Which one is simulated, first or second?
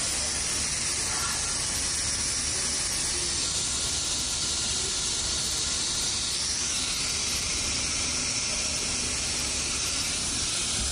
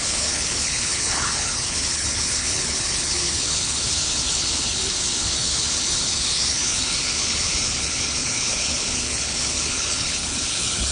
second